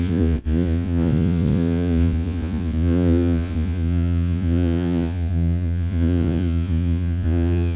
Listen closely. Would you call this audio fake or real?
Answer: fake